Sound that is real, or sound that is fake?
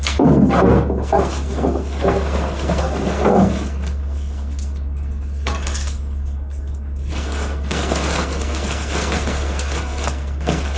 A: fake